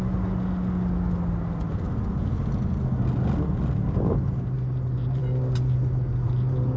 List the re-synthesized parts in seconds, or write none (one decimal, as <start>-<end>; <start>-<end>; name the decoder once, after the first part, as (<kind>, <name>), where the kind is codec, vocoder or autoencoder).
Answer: none